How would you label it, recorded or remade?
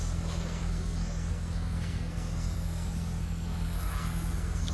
remade